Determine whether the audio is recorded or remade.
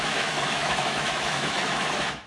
remade